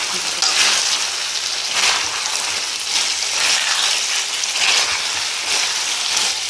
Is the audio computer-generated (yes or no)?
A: no